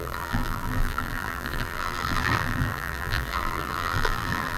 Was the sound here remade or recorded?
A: remade